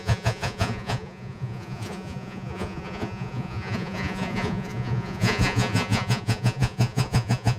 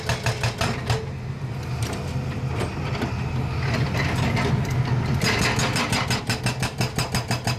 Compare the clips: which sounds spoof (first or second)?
first